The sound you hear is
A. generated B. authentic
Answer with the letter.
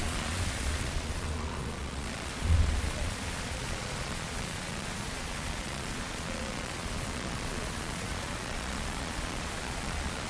A